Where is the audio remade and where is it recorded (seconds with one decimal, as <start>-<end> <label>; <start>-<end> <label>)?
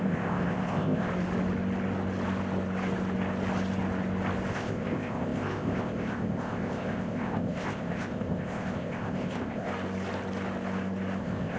0.0-1.1 remade; 1.1-4.5 recorded; 4.5-9.7 remade; 9.7-11.2 recorded; 11.2-11.6 remade